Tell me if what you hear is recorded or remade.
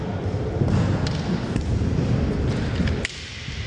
recorded